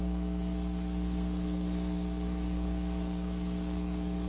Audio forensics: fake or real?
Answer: fake